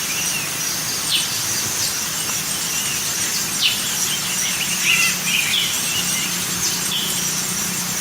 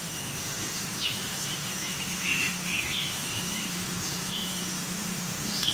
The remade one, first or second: second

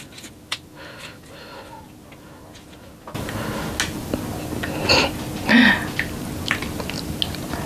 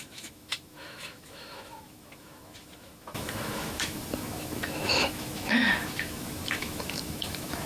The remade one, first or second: second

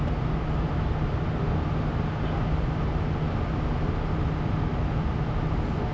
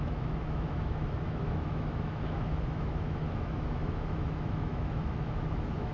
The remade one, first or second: second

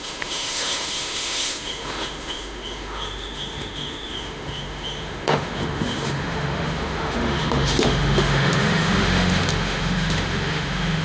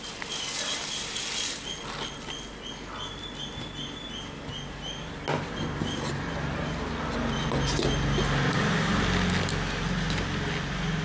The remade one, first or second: first